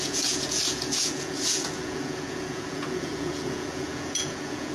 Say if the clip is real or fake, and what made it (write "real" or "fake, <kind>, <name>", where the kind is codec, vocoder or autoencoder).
fake, vocoder, Vocos